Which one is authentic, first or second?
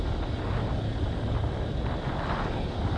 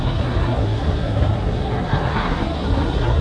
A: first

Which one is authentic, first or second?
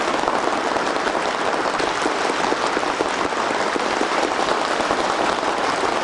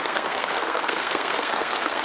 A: first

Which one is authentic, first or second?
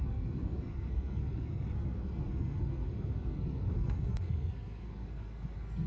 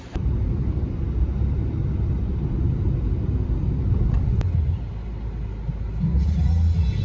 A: second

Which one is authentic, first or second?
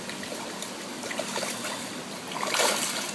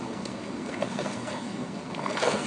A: first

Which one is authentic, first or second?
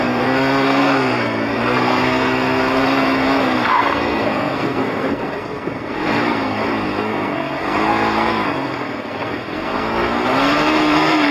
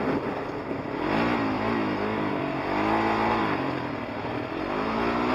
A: second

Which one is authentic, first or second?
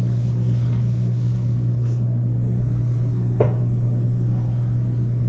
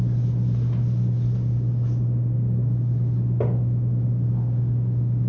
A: second